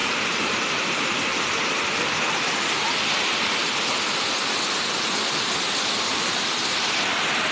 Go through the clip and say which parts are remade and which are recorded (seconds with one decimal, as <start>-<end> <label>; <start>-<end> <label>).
0.0-3.5 remade; 3.5-6.1 recorded; 6.1-7.5 remade